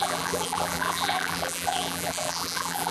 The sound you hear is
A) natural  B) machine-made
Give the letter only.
B